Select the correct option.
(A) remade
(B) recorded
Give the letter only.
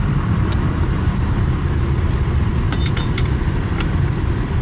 A